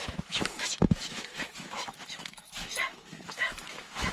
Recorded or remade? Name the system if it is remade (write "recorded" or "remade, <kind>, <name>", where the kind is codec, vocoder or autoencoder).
remade, autoencoder, DAC-VAE